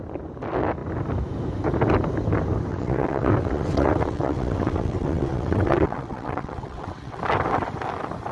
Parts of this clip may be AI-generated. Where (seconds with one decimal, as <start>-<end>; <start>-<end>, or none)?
2.7-7.2